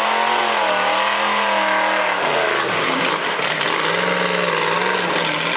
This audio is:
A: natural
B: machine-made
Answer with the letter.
A